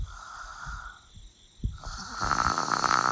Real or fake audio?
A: real